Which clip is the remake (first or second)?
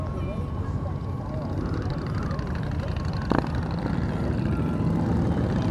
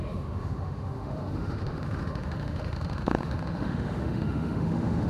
second